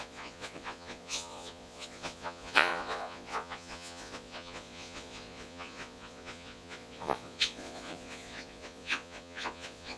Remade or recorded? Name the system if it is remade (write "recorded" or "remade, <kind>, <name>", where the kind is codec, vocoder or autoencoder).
remade, vocoder, Vocos